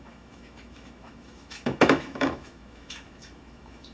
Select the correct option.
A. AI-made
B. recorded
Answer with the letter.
A